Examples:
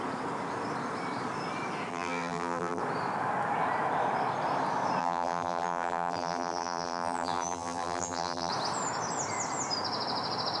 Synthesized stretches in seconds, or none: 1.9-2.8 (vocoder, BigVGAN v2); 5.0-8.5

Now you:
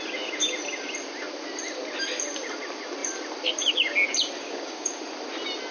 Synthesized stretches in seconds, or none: 4.4-5.0 (codec, DAC)